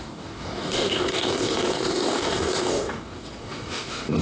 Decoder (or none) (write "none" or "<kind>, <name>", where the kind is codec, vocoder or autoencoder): codec, DAC